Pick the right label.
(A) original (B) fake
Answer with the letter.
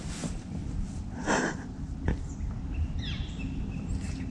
A